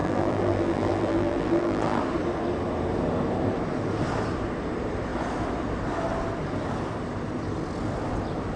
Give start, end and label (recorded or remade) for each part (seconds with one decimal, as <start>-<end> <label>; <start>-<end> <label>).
0.0-2.0 remade; 2.0-8.6 recorded